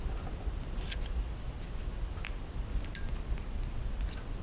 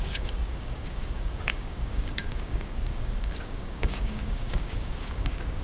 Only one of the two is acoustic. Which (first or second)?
first